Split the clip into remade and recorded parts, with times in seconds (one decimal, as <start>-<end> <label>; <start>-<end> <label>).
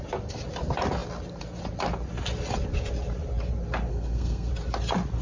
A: 0.0-3.9 recorded; 3.9-4.5 remade; 4.5-5.2 recorded